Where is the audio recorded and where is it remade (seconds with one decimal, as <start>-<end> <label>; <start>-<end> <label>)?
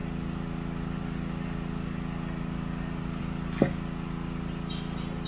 0.0-5.3 recorded